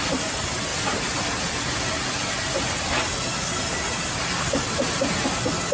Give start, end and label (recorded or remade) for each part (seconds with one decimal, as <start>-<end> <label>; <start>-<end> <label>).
0.0-5.7 recorded